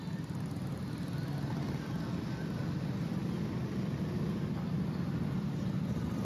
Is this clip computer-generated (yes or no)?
no